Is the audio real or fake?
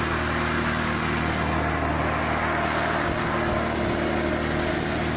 real